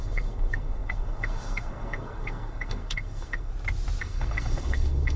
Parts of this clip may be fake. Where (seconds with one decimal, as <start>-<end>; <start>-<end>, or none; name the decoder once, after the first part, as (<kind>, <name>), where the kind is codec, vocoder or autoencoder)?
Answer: 0.0-3.5 (codec, SNAC); 4.0-5.2